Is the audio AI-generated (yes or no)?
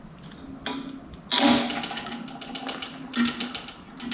no